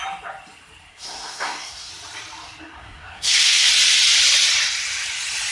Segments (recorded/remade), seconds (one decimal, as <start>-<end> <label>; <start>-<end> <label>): 0.0-0.9 recorded; 0.9-1.9 remade; 1.9-2.6 recorded; 2.6-3.7 remade; 3.7-5.5 recorded